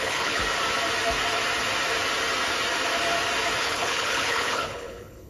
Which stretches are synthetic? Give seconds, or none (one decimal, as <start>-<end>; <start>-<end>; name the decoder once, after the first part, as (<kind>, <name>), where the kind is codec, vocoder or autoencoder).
0.0-0.4 (codec, HILCodec); 3.6-5.3